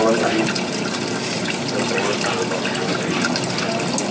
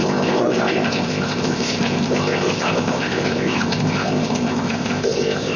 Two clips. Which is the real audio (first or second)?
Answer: first